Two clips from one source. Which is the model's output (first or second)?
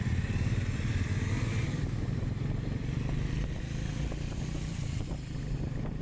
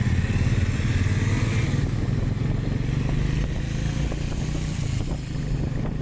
first